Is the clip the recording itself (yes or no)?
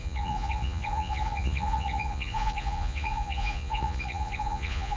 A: no